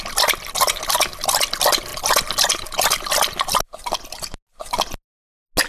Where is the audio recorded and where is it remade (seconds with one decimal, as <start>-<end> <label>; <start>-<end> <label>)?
0.0-5.7 recorded